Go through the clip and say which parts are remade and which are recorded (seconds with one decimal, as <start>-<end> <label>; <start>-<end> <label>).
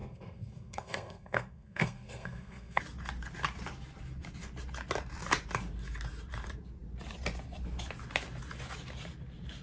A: 0.0-2.8 remade; 2.8-9.6 recorded